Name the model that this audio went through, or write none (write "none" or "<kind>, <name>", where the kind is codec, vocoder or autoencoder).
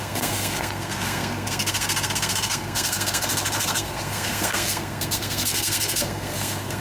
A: codec, SNAC